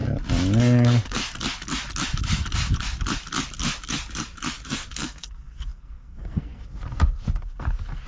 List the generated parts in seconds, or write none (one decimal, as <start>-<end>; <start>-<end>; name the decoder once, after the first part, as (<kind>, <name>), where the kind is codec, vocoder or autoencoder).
0.6-1.2 (codec, SNAC); 4.7-8.1

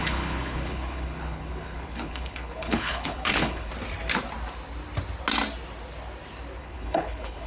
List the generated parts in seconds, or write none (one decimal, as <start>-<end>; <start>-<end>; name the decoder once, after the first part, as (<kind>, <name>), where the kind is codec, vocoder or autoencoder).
0.0-3.7 (codec, HILCodec); 6.6-7.5

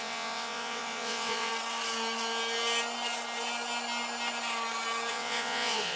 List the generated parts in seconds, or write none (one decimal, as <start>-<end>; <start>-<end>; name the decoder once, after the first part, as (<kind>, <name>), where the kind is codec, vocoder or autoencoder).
0.0-1.5 (vocoder, WaveNeXt); 5.1-6.0

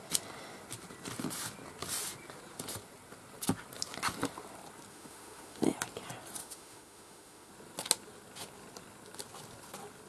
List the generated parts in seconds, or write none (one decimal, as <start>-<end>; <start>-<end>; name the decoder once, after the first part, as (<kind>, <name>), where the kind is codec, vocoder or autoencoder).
4.9-5.6 (autoencoder, DAC-VAE); 6.4-7.5

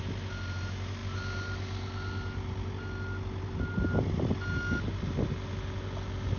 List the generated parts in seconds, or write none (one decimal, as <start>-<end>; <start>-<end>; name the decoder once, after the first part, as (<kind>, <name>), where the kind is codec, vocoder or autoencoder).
none

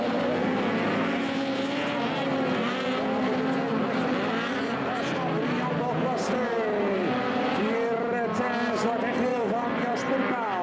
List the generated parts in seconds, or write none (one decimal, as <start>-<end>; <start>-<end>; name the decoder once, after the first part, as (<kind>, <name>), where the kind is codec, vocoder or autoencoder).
9.3-10.0 (vocoder, BigVGAN v2)